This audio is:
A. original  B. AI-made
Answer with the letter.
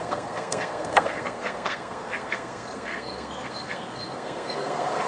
B